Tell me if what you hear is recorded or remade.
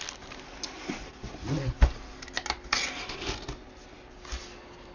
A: recorded